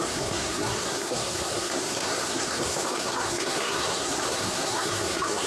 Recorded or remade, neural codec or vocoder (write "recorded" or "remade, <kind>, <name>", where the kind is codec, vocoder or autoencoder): remade, codec, SNAC